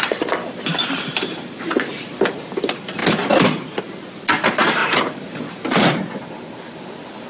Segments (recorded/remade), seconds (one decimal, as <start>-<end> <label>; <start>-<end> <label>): 0.0-4.8 recorded; 4.8-6.4 remade; 6.4-7.3 recorded